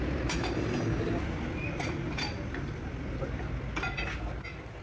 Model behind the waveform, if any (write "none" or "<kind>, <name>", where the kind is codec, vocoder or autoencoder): none